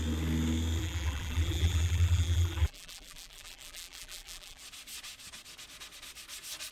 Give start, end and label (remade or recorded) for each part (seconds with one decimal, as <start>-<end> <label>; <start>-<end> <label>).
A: 0.0-0.8 recorded; 0.8-4.6 remade; 4.6-6.7 recorded